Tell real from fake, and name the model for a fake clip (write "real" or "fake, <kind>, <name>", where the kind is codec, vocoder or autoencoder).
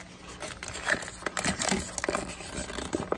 real